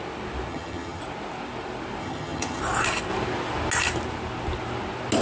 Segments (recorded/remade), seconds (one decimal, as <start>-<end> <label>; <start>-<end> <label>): 0.0-0.5 recorded; 0.5-1.0 remade; 1.0-2.0 recorded; 2.0-2.6 remade; 2.6-5.2 recorded